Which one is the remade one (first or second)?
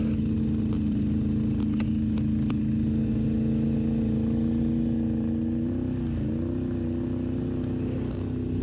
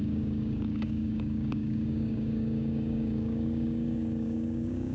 second